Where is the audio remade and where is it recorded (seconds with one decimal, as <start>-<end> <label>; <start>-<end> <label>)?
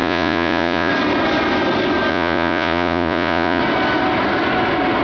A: 0.0-0.9 remade; 0.9-2.1 recorded; 2.1-3.6 remade; 3.6-5.0 recorded